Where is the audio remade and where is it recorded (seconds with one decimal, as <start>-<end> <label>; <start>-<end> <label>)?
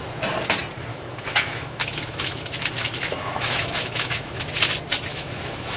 0.0-0.9 recorded; 0.9-4.4 remade; 4.4-5.1 recorded; 5.1-5.8 remade